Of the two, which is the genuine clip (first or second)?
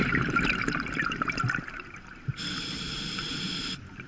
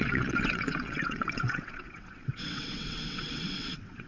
first